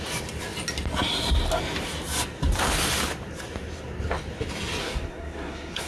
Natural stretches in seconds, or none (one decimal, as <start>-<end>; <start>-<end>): 0.0-4.8